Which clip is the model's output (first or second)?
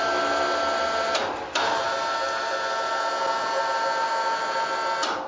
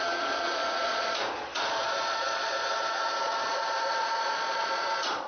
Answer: second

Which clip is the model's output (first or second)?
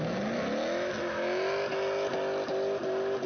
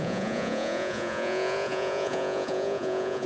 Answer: second